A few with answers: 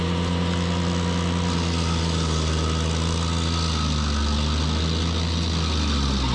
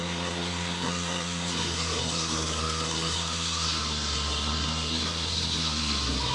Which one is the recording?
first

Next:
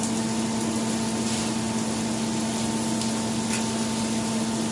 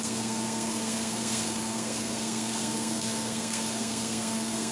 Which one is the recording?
first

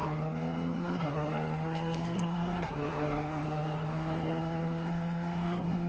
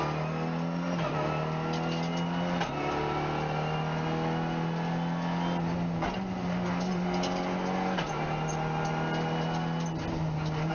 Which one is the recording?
second